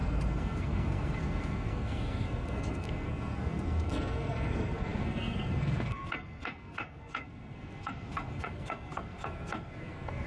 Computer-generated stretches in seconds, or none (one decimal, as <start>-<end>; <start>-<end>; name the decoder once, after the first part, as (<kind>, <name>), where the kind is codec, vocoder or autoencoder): 0.0-10.3 (codec, SNAC)